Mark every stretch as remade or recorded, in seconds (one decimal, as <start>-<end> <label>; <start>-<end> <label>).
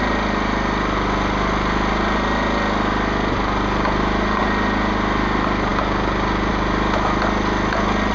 0.0-8.1 recorded